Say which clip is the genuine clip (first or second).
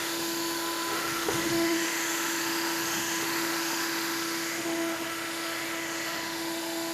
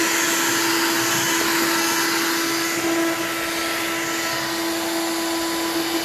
second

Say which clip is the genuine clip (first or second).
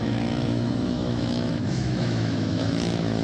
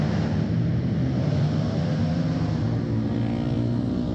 second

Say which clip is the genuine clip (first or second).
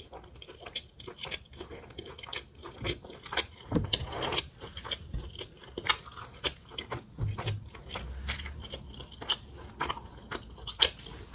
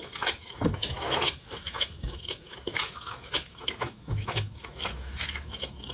first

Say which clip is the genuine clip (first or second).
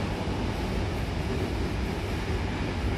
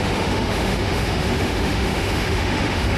first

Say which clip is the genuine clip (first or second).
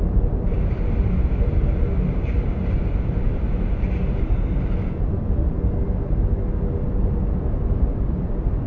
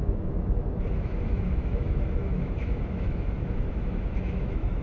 first